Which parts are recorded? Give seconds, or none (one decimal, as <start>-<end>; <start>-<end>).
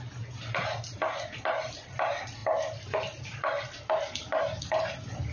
0.0-5.3